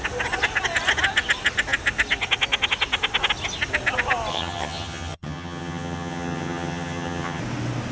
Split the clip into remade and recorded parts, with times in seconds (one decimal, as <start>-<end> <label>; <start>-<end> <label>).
0.0-4.3 recorded; 4.3-7.4 remade; 7.4-7.9 recorded